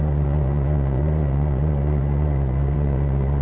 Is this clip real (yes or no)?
no